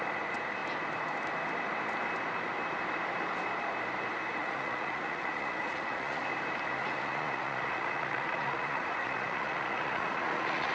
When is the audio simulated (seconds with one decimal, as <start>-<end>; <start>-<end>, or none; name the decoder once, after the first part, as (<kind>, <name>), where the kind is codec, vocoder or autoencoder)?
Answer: 4.4-6.2 (vocoder, Vocos); 6.8-10.7